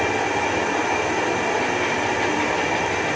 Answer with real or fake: real